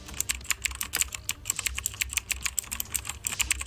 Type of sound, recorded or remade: recorded